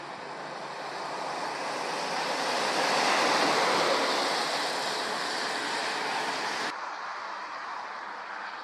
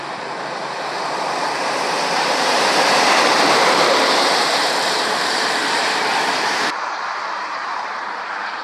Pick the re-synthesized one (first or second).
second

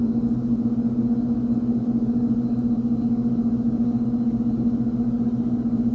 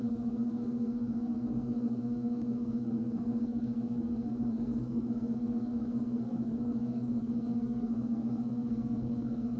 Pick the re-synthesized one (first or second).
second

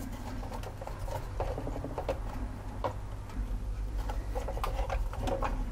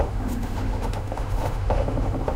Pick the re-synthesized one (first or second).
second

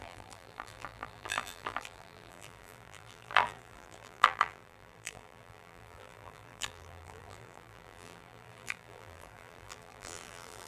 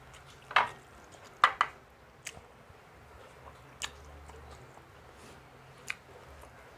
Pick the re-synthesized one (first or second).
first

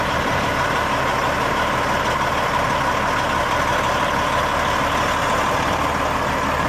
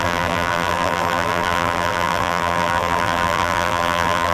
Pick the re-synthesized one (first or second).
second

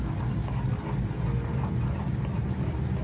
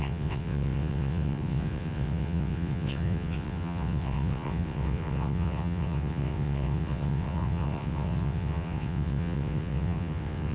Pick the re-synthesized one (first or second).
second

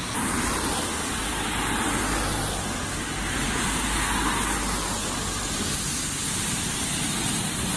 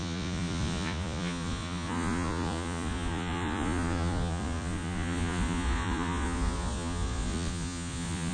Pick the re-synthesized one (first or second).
second